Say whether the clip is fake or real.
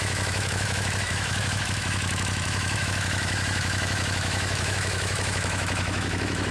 fake